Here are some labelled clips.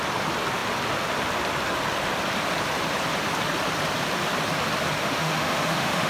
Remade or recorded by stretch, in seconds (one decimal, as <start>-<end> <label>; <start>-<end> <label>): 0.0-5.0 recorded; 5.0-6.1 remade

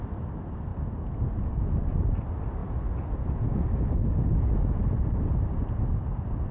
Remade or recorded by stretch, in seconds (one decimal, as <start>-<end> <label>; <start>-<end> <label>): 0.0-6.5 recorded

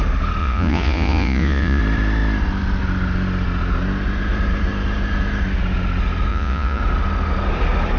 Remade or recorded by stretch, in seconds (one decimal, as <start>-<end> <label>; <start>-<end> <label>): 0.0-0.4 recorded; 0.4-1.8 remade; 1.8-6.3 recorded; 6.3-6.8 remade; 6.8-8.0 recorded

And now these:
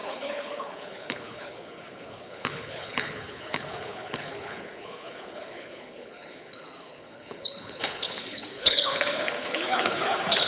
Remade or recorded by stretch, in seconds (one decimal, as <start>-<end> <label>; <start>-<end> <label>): 0.0-10.5 remade